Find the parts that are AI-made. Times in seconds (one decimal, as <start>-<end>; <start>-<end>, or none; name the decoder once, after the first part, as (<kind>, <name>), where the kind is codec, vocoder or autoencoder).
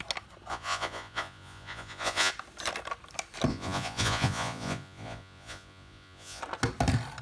0.5-2.3 (vocoder, Vocos); 3.5-6.4